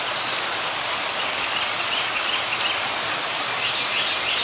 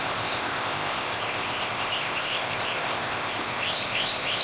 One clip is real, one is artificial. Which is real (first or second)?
first